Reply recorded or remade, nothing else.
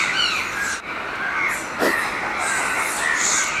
recorded